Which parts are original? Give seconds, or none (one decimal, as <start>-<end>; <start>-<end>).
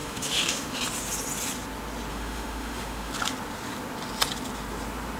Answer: 0.8-2.1; 3.1-5.2